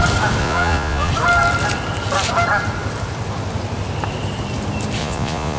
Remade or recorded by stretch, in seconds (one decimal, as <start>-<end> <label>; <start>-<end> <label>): 0.0-0.4 recorded; 0.4-1.1 remade; 1.1-5.0 recorded; 5.0-5.6 remade